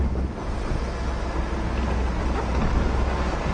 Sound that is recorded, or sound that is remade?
recorded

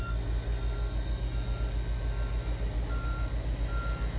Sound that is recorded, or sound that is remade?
recorded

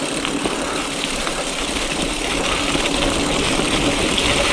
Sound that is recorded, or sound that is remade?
recorded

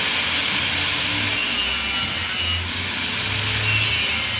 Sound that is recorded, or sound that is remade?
recorded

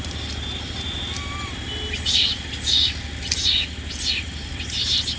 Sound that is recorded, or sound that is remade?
recorded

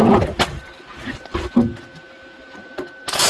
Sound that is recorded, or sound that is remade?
recorded